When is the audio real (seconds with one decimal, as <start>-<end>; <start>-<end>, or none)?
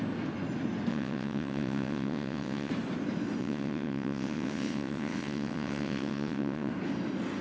0.0-0.9; 2.7-3.4; 6.7-7.4